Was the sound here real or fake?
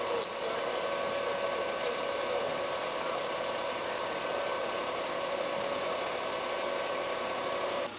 real